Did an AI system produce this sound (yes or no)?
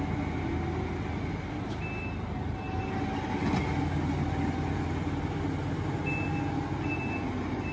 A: no